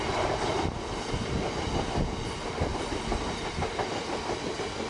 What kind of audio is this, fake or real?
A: real